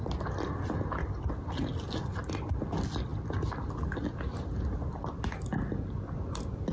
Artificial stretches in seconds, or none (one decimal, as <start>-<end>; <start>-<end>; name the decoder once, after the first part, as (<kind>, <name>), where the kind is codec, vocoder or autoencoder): none